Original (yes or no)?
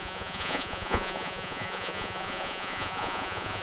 no